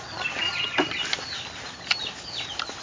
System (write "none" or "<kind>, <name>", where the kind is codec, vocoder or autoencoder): none